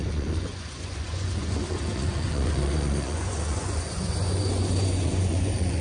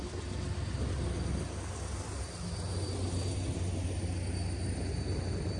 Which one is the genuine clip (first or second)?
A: second